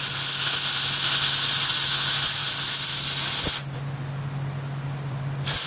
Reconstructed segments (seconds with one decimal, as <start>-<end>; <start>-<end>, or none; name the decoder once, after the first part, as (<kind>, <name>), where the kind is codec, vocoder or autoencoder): none